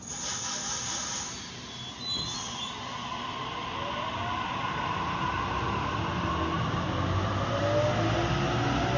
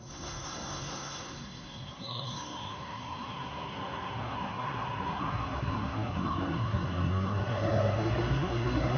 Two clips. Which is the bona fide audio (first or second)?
first